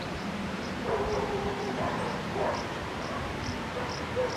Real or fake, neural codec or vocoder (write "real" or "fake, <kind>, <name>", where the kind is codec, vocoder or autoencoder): fake, vocoder, BigVGAN v2